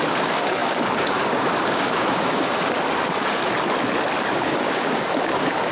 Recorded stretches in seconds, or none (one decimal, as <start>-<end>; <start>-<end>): 3.4-4.3